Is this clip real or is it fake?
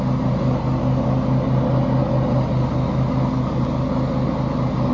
real